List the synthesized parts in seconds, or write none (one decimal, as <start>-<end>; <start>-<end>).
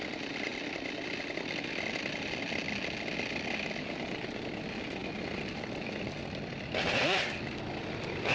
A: none